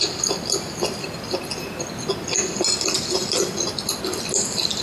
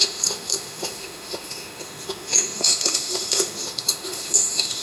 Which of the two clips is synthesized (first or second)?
second